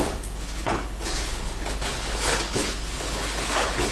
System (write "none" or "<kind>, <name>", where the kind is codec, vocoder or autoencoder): codec, HILCodec